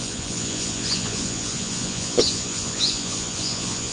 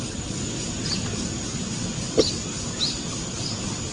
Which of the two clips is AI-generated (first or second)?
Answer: first